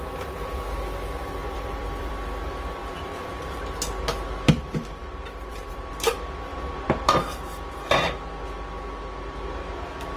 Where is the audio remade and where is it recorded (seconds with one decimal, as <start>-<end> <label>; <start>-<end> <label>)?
0.0-1.4 recorded; 1.4-2.1 remade; 2.1-2.8 recorded; 2.8-3.4 remade; 3.4-5.0 recorded; 5.0-5.5 remade; 5.5-6.5 recorded; 6.5-7.1 remade; 7.1-10.2 recorded